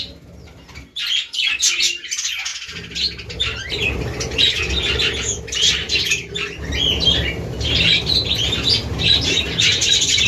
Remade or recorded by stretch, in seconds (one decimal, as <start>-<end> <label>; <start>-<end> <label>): 0.0-10.3 recorded